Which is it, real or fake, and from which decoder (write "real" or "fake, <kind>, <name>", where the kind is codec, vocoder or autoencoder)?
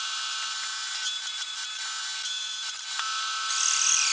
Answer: real